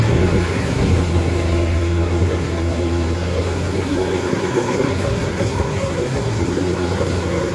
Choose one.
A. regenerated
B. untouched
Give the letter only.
A